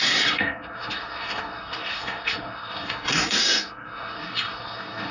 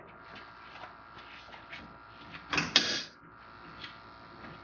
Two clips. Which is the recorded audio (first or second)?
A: second